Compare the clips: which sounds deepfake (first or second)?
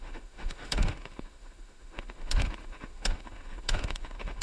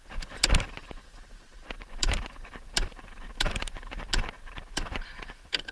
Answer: first